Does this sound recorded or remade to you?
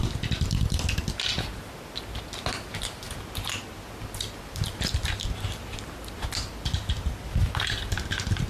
recorded